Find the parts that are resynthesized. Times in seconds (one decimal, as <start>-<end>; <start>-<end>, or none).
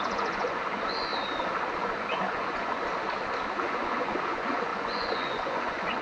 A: 0.0-1.1; 1.8-2.8; 3.6-6.0